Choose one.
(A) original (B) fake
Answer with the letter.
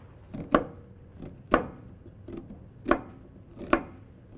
A